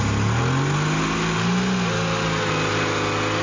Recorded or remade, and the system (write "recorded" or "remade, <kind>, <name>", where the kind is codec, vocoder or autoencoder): recorded